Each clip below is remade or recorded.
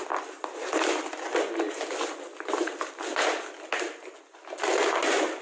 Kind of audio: recorded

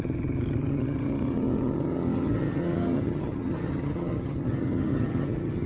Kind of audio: remade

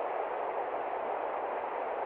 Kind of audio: recorded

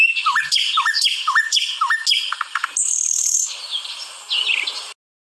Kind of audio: recorded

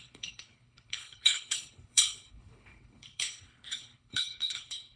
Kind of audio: remade